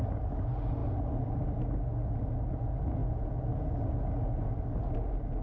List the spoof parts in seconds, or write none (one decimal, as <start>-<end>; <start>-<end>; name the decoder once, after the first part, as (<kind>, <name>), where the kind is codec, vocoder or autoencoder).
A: 0.8-1.5 (vocoder, BigVGAN v2)